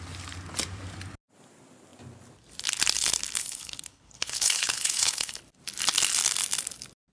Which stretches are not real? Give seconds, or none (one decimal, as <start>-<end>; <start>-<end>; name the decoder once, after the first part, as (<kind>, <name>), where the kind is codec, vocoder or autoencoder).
3.4-5.4 (codec, HILCodec)